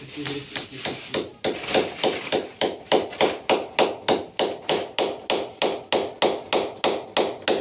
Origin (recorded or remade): recorded